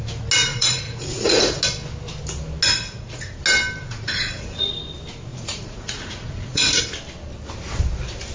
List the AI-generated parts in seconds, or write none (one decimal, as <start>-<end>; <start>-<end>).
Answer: 0.5-1.6; 2.7-3.4; 3.8-4.7; 5.3-6.8